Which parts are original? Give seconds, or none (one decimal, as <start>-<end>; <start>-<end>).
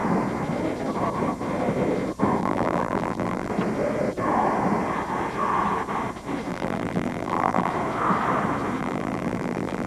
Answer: 0.0-2.4; 3.5-6.5; 7.7-8.8